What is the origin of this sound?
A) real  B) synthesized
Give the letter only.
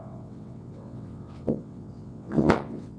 B